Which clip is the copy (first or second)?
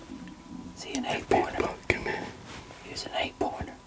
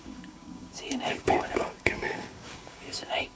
second